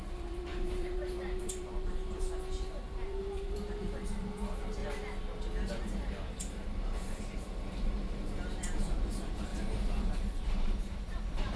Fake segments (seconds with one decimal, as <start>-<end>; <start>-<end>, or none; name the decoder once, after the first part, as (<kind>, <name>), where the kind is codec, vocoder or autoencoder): 0.0-4.8 (vocoder, BigVGAN v2); 5.7-9.5; 10.0-11.6